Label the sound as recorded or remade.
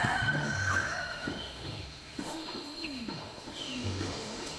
remade